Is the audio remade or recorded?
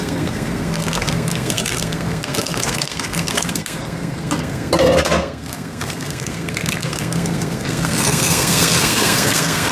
remade